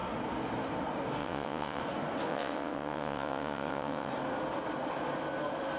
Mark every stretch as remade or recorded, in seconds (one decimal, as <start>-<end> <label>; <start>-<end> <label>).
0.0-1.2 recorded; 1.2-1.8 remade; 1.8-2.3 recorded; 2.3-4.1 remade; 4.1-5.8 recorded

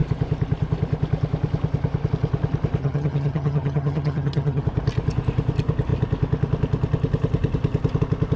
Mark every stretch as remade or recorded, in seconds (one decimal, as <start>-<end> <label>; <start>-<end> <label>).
0.0-2.8 recorded; 2.8-4.6 remade; 4.6-8.4 recorded

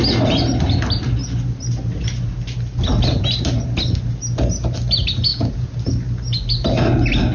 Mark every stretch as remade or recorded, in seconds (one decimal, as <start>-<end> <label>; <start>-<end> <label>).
0.0-5.3 recorded; 5.3-5.8 remade; 5.8-7.3 recorded

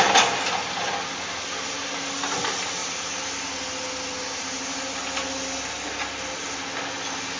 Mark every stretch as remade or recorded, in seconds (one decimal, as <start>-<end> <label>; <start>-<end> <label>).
0.0-7.4 recorded